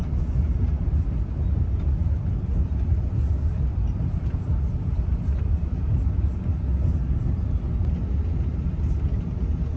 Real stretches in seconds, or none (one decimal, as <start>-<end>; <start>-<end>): 0.0-2.0; 6.5-9.8